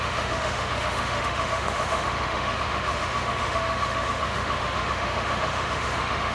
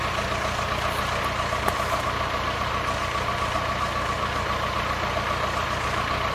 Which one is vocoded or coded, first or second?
first